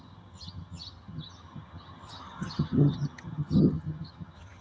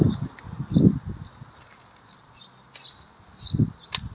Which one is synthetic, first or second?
first